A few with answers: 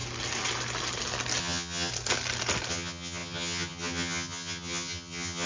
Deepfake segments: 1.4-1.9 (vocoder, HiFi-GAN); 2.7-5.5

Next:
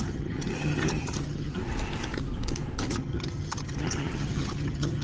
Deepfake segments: 0.0-1.6 (vocoder, HiFi-GAN); 2.9-5.0

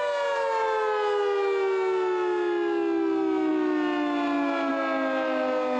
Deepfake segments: none

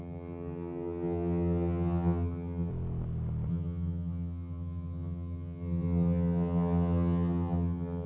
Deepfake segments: 0.0-2.7 (vocoder, HiFi-GAN); 3.5-8.1

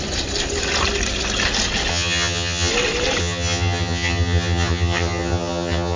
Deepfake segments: 1.9-2.7 (vocoder, HiFi-GAN); 3.2-6.0

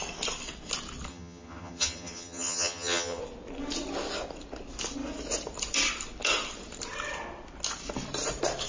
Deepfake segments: 1.1-3.2 (vocoder, HiFi-GAN)

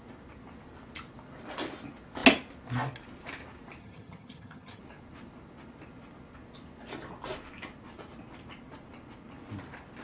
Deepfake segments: 3.8-4.8 (vocoder, HiFi-GAN)

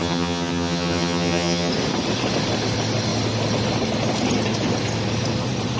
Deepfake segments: 0.0-1.7 (vocoder, HiFi-GAN)